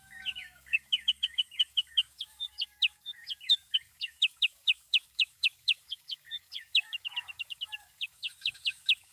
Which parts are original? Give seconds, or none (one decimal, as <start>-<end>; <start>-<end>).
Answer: none